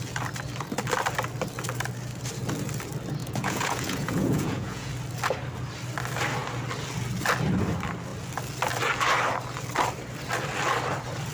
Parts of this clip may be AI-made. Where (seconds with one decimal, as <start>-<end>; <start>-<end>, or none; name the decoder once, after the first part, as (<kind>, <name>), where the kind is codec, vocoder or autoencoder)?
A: 3.2-4.9 (vocoder, Vocos)